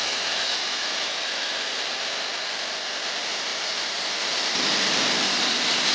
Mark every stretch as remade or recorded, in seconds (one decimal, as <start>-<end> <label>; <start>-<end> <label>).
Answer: 0.0-1.5 remade; 1.5-5.9 recorded